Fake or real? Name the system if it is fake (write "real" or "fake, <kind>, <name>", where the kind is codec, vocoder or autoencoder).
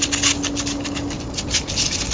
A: real